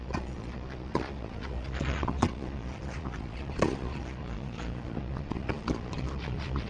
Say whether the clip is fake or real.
fake